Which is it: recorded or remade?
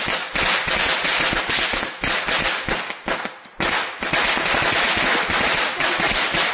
recorded